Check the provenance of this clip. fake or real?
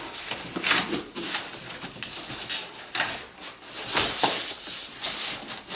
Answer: real